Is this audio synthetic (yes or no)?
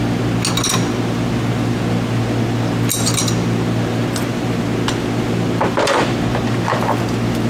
no